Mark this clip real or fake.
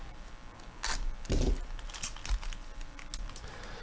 real